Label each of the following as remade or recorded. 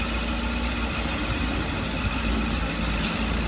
recorded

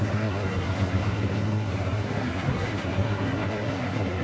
remade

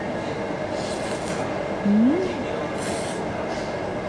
recorded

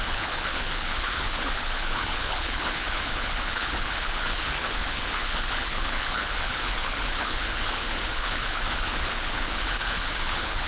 remade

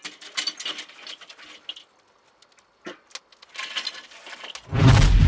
recorded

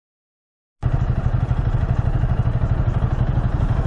recorded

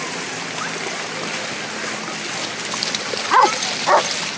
recorded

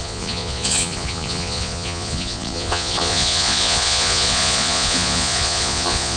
remade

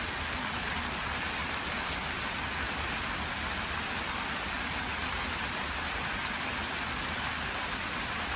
recorded